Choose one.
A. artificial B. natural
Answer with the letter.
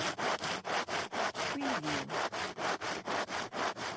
B